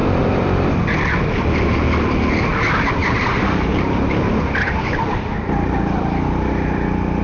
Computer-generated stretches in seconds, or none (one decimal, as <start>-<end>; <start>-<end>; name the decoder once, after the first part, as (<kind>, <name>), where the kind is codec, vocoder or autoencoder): 0.0-0.7 (vocoder, BigVGAN v2); 3.0-3.7